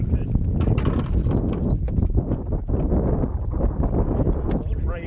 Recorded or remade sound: recorded